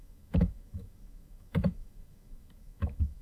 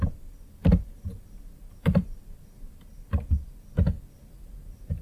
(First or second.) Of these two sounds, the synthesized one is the first